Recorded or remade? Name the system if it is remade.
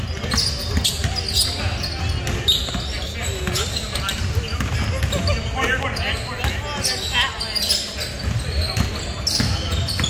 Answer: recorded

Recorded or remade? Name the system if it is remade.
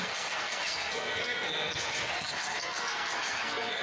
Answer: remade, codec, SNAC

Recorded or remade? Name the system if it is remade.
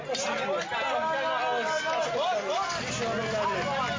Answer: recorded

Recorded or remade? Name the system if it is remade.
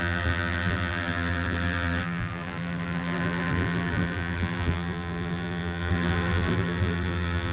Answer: remade, vocoder, BigVGAN v2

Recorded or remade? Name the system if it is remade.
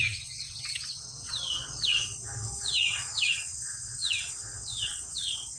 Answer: remade, vocoder, WaveNeXt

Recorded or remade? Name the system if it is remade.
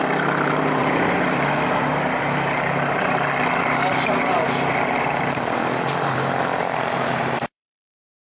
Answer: remade, vocoder, BigVGAN v2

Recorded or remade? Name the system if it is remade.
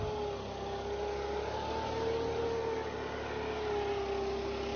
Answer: recorded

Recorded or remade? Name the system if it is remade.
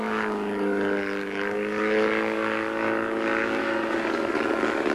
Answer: remade, codec, DAC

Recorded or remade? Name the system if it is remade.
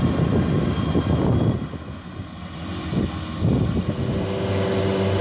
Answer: recorded